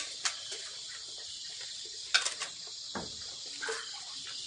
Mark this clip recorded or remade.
recorded